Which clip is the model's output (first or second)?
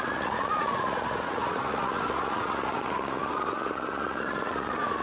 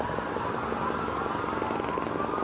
first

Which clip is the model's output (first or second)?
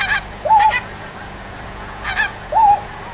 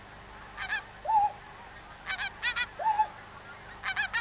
first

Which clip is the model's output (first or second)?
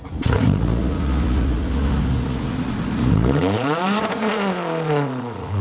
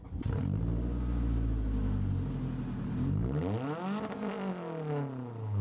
first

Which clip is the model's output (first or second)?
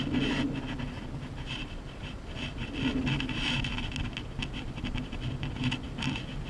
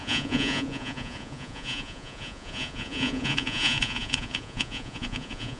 second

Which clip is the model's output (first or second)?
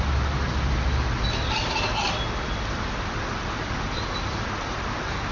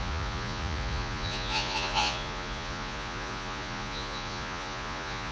second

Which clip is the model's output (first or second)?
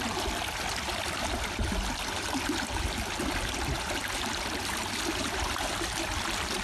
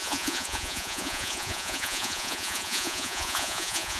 second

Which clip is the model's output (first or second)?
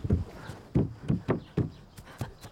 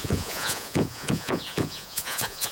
second